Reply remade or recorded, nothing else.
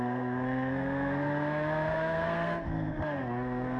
remade